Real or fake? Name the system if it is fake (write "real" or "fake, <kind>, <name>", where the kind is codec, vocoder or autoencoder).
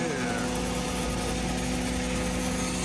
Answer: real